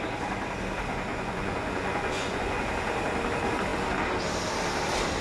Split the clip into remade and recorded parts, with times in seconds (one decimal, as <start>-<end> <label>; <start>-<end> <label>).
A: 0.0-1.1 recorded; 1.1-2.6 remade; 2.6-5.2 recorded